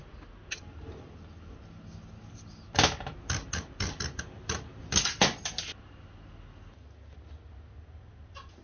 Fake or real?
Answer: real